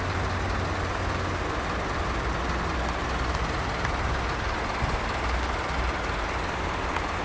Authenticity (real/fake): real